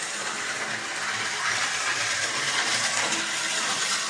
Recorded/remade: recorded